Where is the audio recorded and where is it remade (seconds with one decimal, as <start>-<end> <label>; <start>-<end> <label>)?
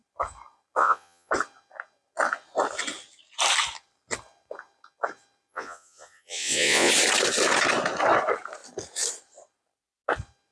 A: 0.0-0.8 recorded; 0.8-1.3 remade; 1.3-5.5 recorded; 5.5-6.9 remade; 6.9-10.5 recorded